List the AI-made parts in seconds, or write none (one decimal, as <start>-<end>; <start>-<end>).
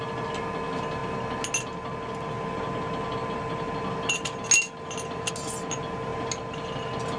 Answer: none